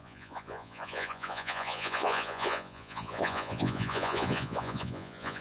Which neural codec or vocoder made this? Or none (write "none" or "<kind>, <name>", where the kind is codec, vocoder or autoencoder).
vocoder, Vocos